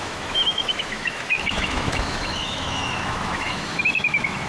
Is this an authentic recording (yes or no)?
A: no